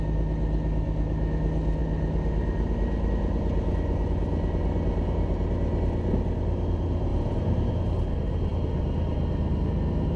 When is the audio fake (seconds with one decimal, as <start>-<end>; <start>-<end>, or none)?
7.1-7.7